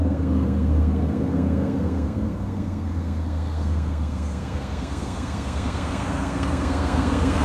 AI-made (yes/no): yes